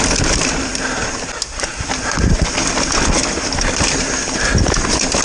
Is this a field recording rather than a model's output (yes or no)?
yes